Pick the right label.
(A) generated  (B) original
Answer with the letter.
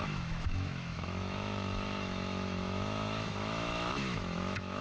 A